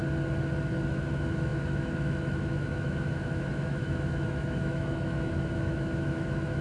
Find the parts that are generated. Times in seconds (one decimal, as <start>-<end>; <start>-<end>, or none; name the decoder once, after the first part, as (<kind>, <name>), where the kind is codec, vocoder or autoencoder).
0.8-6.6 (autoencoder, DAC-VAE)